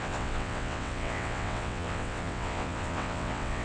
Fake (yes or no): yes